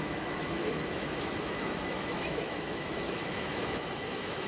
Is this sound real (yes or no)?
no